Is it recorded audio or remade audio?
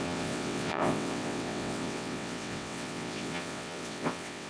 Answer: remade